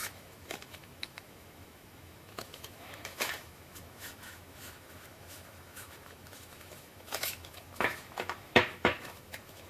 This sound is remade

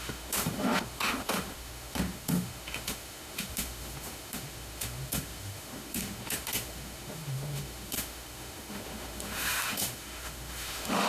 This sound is remade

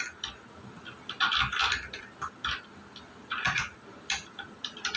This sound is recorded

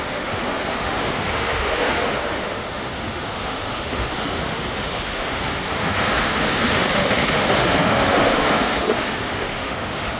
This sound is remade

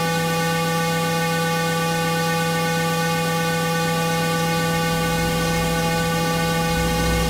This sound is remade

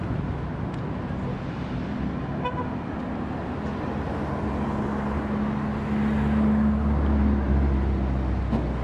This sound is recorded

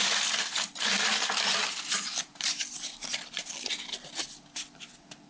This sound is recorded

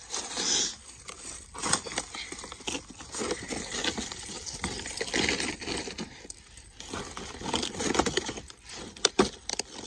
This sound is recorded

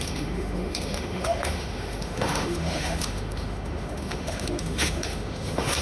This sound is remade